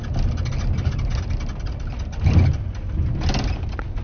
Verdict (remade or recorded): recorded